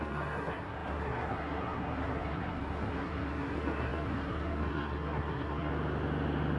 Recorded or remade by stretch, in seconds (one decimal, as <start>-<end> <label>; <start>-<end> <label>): 0.0-5.7 remade; 5.7-6.6 recorded